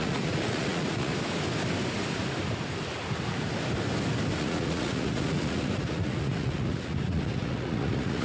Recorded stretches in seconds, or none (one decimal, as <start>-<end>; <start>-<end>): 1.1-4.4